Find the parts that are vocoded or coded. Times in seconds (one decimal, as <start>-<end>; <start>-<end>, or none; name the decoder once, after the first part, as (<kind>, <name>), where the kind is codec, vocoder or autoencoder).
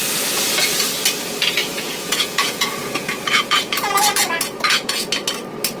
1.6-5.1 (vocoder, Vocos)